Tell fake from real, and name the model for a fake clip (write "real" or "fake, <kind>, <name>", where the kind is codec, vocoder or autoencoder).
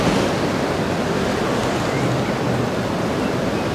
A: real